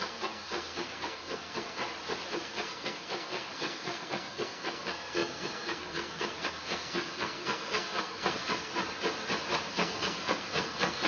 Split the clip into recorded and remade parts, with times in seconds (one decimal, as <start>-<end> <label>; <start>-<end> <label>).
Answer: 0.0-1.8 remade; 1.8-2.3 recorded; 2.3-8.7 remade; 8.7-9.7 recorded; 9.7-11.1 remade